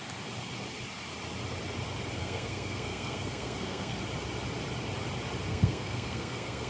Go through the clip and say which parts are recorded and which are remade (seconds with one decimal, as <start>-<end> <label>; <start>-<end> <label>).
0.0-2.2 recorded; 2.2-4.0 remade; 4.0-5.5 recorded; 5.5-6.7 remade